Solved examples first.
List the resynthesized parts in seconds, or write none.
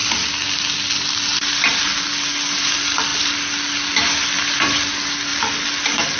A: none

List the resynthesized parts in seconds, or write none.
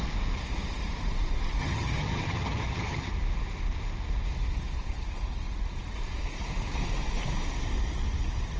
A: 1.6-3.1